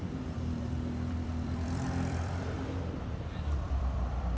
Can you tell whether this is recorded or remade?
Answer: remade